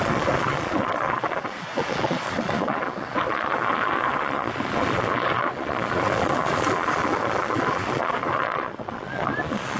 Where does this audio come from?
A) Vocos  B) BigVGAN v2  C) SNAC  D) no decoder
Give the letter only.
A